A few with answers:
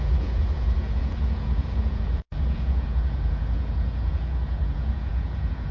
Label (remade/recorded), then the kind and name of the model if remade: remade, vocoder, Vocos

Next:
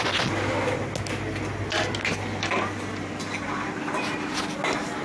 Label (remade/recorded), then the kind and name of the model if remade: recorded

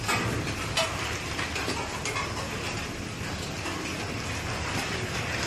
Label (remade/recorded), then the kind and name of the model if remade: recorded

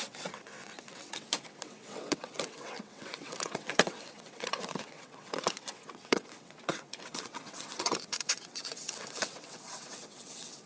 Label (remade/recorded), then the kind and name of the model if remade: remade, vocoder, WaveNeXt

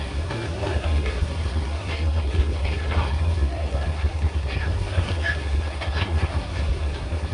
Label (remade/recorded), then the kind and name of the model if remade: remade, codec, SNAC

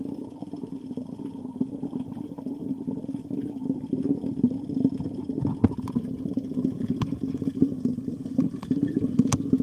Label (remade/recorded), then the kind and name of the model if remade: recorded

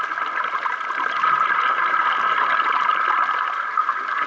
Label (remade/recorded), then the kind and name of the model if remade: recorded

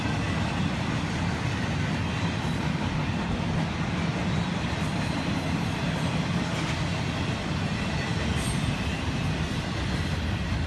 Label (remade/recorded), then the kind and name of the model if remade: recorded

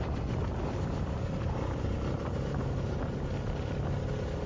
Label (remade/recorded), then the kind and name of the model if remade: recorded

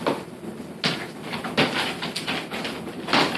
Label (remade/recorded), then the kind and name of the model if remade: recorded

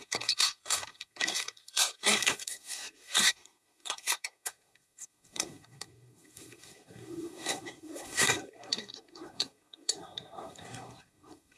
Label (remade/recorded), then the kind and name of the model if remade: remade, codec, SNAC